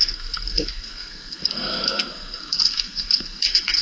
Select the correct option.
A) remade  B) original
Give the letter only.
A